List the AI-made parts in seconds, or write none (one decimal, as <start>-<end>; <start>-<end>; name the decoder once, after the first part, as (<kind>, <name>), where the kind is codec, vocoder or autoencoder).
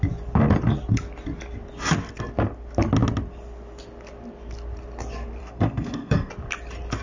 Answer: 5.4-6.3 (codec, SNAC)